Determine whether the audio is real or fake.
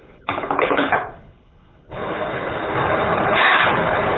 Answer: fake